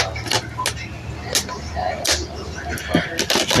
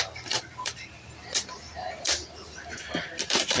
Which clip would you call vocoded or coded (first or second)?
second